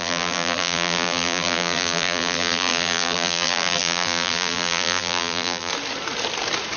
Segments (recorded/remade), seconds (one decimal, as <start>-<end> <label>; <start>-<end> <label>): 0.0-5.7 remade; 5.7-6.8 recorded